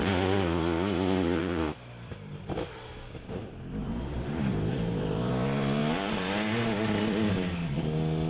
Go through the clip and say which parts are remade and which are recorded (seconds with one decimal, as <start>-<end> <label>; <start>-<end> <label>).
0.0-1.4 recorded; 1.4-3.4 remade; 3.4-3.8 recorded; 3.8-5.3 remade; 5.3-8.3 recorded

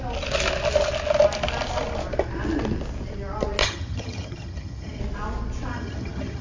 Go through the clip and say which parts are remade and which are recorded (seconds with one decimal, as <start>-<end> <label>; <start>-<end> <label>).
0.0-3.6 recorded; 3.6-5.0 remade; 5.0-5.7 recorded; 5.7-6.4 remade

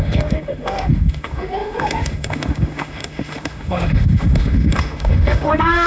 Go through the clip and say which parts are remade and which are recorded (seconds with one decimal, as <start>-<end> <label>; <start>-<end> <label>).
0.0-5.9 remade

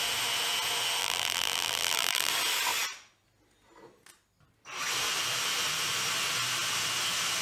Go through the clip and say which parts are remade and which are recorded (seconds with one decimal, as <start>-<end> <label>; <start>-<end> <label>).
0.0-1.0 recorded; 1.0-2.3 remade; 2.3-7.4 recorded

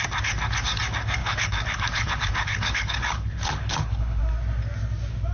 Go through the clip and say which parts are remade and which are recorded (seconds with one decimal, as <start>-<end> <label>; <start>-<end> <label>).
0.0-1.2 recorded; 1.2-4.2 remade; 4.2-5.3 recorded